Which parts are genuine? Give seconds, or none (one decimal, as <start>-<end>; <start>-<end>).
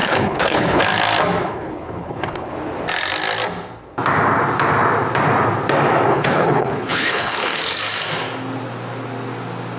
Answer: 0.8-1.4; 2.5-6.1; 7.6-9.8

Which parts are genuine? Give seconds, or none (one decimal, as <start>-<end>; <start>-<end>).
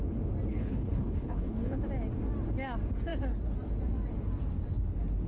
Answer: 0.0-0.5; 1.8-5.3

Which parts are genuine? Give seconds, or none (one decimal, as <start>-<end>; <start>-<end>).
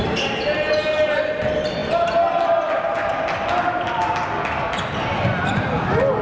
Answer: 0.0-6.2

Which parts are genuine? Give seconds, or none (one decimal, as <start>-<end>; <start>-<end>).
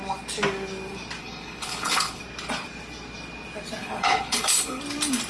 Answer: 0.0-1.2; 2.2-3.8; 4.8-5.3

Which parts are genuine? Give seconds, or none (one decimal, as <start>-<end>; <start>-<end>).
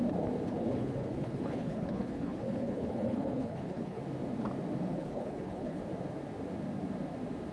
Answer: 0.0-0.5; 4.0-4.9; 5.8-7.5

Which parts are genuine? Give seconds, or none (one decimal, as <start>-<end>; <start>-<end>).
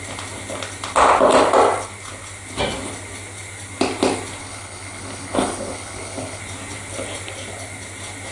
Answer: 0.0-4.4; 6.4-8.3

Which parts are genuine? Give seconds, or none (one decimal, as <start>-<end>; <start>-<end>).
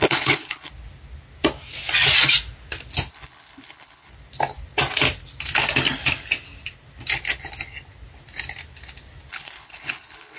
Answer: 0.7-3.1; 4.1-9.3